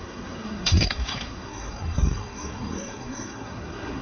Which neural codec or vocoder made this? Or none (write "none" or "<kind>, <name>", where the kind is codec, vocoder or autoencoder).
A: codec, SNAC